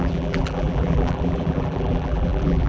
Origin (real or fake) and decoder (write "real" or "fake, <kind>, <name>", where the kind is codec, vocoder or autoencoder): fake, vocoder, BigVGAN v2